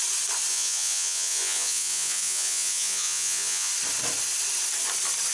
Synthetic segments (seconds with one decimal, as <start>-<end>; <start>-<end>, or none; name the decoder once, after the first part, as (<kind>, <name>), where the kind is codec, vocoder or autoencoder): 0.5-3.7 (vocoder, Vocos)